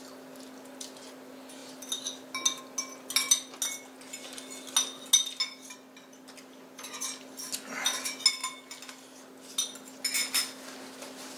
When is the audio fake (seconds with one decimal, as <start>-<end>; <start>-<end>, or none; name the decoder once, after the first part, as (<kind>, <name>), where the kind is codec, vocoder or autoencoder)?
none